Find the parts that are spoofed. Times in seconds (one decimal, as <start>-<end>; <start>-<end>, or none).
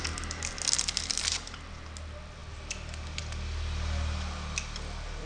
none